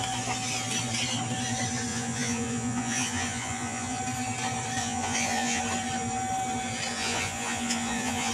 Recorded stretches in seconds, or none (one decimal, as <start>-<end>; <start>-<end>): 0.0-1.9; 4.0-4.8; 5.6-6.9